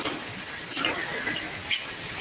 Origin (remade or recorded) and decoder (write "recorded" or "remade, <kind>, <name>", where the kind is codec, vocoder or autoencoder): recorded